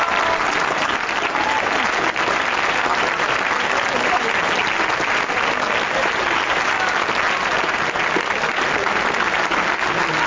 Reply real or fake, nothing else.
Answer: real